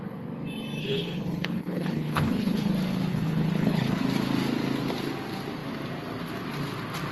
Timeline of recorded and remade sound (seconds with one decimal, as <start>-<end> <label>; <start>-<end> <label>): 0.0-0.8 recorded; 0.8-2.7 remade; 2.7-3.1 recorded; 3.1-4.0 remade; 4.0-7.1 recorded